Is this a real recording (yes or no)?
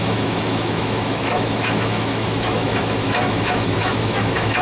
no